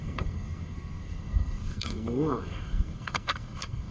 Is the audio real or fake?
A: fake